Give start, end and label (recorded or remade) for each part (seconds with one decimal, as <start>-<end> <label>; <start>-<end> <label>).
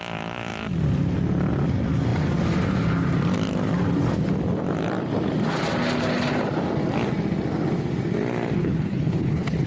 0.0-8.6 recorded; 8.6-9.7 remade